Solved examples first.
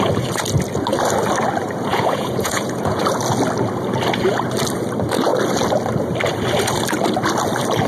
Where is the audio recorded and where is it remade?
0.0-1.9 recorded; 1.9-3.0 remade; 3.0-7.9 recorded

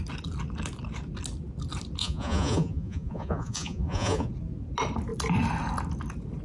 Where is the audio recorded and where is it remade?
0.0-2.0 recorded; 2.0-4.3 remade; 4.3-6.4 recorded

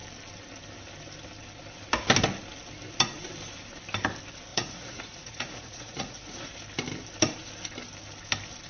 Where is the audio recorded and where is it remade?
0.0-4.5 recorded; 4.5-6.5 remade; 6.5-8.7 recorded

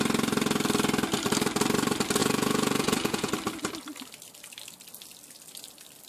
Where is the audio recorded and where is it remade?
0.0-2.2 recorded; 2.2-3.3 remade; 3.3-6.1 recorded

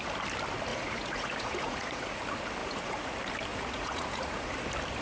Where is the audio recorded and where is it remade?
0.0-0.7 recorded; 0.7-2.2 remade; 2.2-2.6 recorded; 2.6-3.1 remade; 3.1-3.5 recorded; 3.5-4.5 remade; 4.5-5.0 recorded